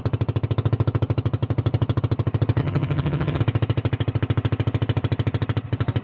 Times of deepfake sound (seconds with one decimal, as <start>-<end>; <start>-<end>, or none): 2.6-3.4